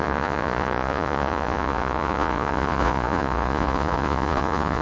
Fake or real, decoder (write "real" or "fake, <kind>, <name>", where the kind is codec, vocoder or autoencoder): fake, vocoder, Vocos